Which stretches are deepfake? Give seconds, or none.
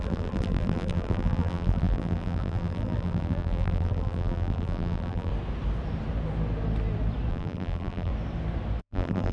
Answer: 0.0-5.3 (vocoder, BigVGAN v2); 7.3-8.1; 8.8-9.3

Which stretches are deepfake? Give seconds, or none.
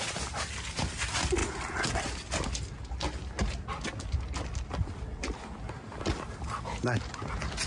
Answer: none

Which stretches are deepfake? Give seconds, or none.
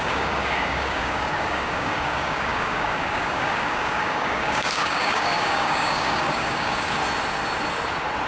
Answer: 0.0-7.0 (codec, DAC)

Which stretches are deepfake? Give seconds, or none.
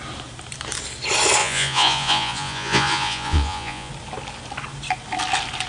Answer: 1.4-3.9 (vocoder, Vocos)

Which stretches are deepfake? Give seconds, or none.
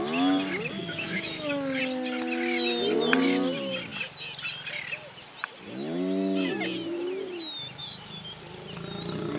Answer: 0.8-1.8 (autoencoder, DAC-VAE); 7.8-8.4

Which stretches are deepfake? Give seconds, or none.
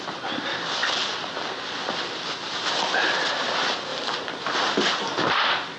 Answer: none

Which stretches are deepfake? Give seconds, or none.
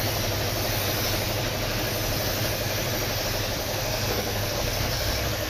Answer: 3.6-5.5 (codec, SNAC)